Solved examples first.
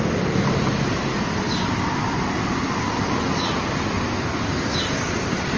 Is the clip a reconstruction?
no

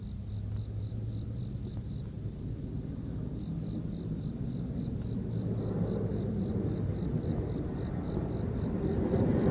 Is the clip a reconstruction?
no